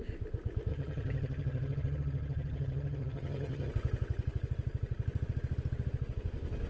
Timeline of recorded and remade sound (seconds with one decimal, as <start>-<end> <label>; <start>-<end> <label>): 0.0-0.7 recorded; 0.7-3.7 remade; 3.7-6.7 recorded